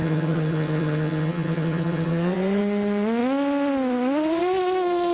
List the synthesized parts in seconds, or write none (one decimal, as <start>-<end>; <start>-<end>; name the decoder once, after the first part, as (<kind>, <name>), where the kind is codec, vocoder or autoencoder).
0.0-2.6 (vocoder, HiFi-GAN)